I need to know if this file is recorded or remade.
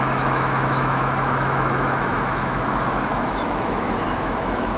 remade